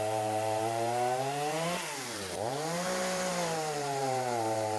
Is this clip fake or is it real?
fake